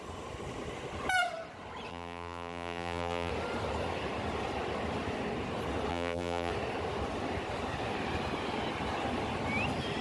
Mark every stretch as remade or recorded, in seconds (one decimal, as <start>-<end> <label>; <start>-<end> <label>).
0.0-1.9 recorded; 1.9-3.3 remade; 3.3-5.9 recorded; 5.9-6.5 remade; 6.5-10.0 recorded